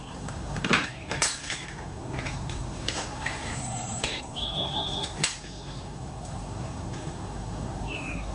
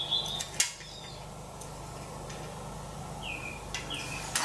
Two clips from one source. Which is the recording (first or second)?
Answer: second